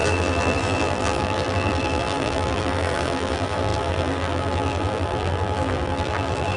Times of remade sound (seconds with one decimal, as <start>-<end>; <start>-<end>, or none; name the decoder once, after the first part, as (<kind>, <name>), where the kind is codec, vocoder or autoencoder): 0.0-6.6 (vocoder, BigVGAN v2)